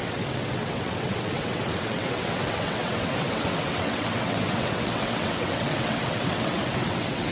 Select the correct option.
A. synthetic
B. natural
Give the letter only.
A